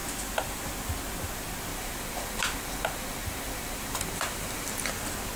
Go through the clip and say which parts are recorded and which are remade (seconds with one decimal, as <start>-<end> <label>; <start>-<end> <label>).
0.0-1.7 recorded; 1.7-4.9 remade; 4.9-5.4 recorded